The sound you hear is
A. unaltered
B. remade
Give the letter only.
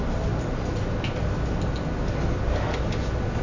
A